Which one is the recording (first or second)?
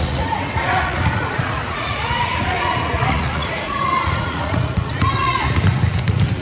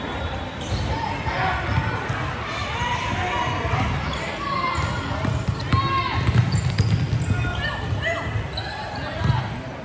second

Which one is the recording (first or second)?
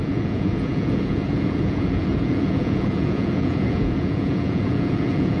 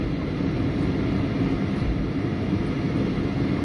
second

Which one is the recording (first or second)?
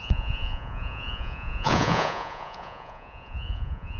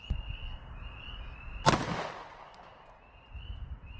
second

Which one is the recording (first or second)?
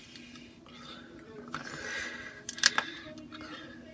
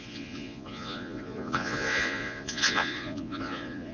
first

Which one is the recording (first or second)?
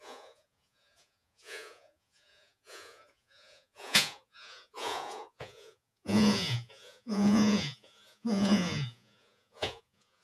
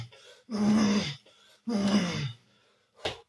second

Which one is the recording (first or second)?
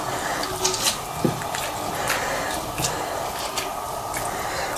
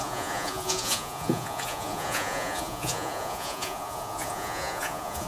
first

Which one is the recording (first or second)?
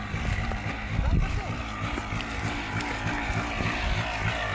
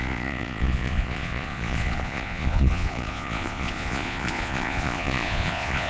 first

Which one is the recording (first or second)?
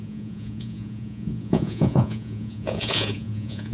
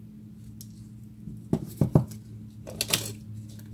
second